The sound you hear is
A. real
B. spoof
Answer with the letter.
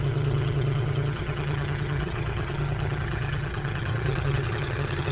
B